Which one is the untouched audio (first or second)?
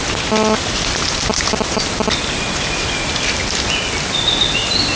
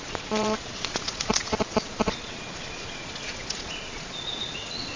first